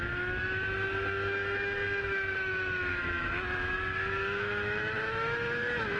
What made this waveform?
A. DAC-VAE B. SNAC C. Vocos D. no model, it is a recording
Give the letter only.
A